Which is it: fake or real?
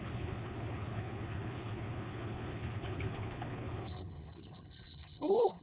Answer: fake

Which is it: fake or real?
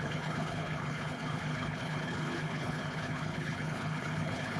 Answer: fake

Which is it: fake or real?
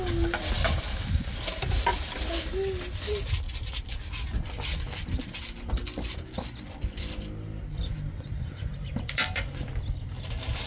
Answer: real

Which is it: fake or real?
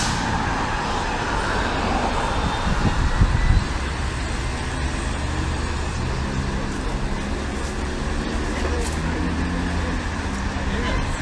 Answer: real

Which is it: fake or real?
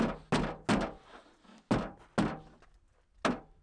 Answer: real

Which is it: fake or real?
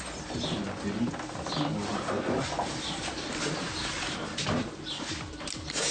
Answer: real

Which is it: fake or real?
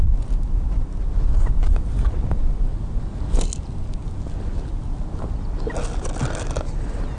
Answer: real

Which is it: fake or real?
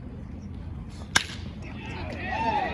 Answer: real